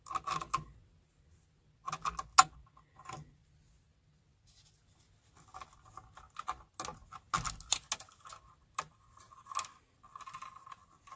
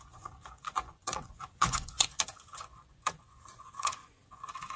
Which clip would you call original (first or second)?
first